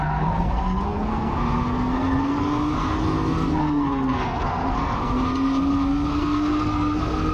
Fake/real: fake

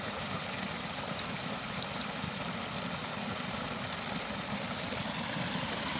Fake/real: real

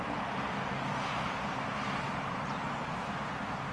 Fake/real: real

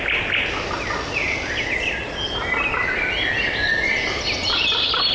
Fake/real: real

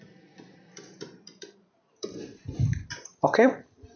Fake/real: fake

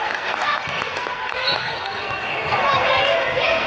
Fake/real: fake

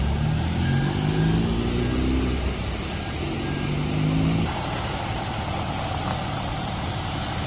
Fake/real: real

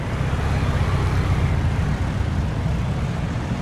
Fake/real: real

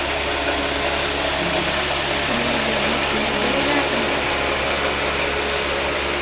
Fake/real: real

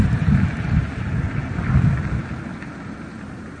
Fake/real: real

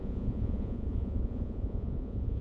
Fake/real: fake